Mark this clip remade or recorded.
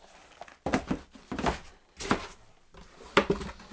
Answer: recorded